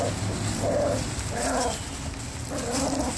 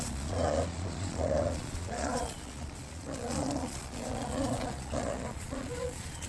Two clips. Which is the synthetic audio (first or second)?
second